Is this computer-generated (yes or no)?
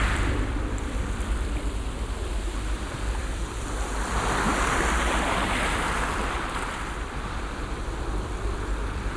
yes